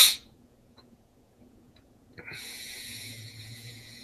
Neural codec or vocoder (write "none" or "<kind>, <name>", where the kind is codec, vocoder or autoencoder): vocoder, Vocos